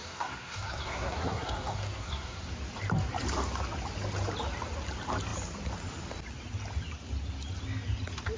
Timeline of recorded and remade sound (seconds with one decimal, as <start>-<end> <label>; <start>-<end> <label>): 0.0-2.5 remade; 2.5-8.4 recorded